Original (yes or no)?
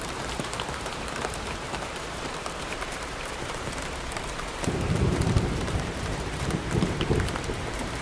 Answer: no